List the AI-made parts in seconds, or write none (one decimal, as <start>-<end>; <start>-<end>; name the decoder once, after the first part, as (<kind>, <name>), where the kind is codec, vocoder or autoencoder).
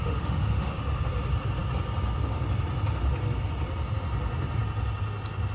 0.0-0.8 (autoencoder, DAC-VAE)